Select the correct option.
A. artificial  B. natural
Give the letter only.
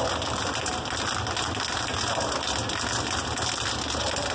B